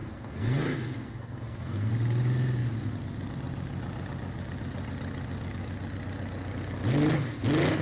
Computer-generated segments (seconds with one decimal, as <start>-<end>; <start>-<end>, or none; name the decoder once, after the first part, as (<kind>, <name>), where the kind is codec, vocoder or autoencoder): 0.0-1.9 (codec, SNAC)